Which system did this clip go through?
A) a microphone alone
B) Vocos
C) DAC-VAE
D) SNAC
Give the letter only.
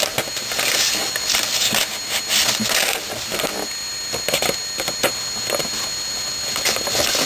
A